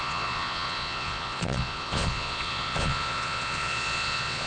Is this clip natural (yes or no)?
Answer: no